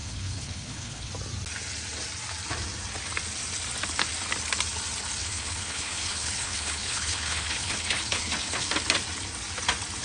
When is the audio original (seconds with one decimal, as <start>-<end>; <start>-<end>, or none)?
1.1-5.2; 8.7-10.0